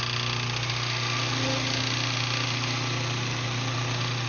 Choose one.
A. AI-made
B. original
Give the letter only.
B